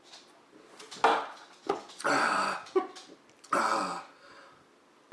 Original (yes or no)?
yes